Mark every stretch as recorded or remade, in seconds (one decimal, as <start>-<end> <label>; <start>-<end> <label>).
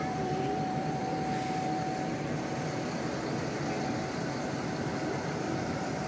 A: 0.0-1.0 remade; 1.0-4.7 recorded; 4.7-6.1 remade